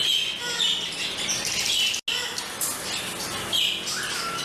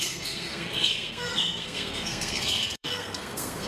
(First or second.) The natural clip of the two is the first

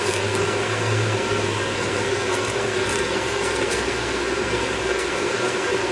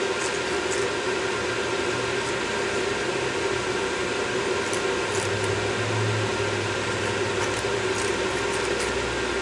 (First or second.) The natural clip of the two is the second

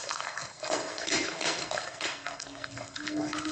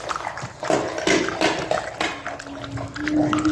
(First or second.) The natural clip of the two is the second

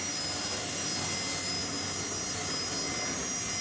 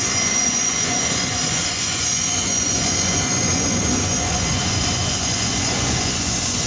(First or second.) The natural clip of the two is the first